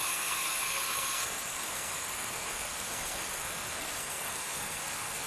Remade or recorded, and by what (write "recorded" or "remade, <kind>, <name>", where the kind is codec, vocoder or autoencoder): remade, codec, SNAC